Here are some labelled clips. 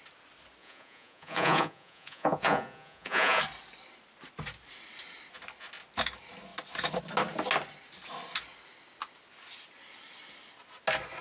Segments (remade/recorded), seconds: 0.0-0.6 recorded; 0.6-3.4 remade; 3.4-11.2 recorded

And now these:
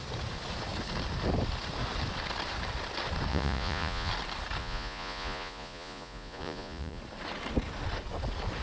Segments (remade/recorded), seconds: 0.0-3.3 recorded; 3.3-4.1 remade; 4.1-4.6 recorded; 4.6-7.0 remade; 7.0-8.6 recorded

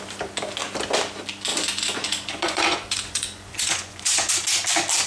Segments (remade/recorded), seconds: 0.0-1.5 recorded; 1.5-4.3 remade; 4.3-5.1 recorded

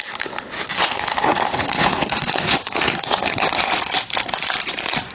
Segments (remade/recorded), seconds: 0.0-0.8 recorded; 0.8-3.9 remade; 3.9-5.1 recorded

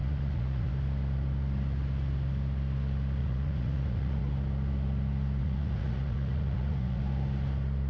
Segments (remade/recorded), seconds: 0.0-0.7 remade; 0.7-3.2 recorded; 3.2-4.3 remade; 4.3-5.4 recorded; 5.4-7.0 remade; 7.0-7.9 recorded

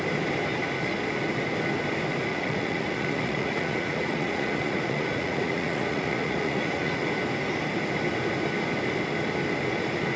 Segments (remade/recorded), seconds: 0.0-2.3 recorded; 2.3-7.0 remade; 7.0-10.2 recorded

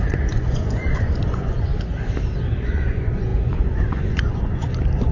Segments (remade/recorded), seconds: 0.0-1.7 remade; 1.7-2.6 recorded; 2.6-5.1 remade

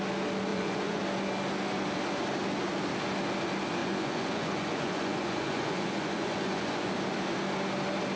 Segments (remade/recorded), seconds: 0.0-0.5 recorded; 0.5-1.0 remade; 1.0-3.8 recorded; 3.8-6.9 remade; 6.9-8.2 recorded